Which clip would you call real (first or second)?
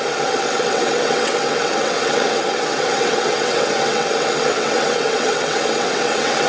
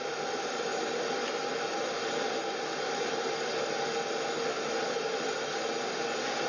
second